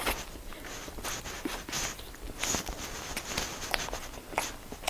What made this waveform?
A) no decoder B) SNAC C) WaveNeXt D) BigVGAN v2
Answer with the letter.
A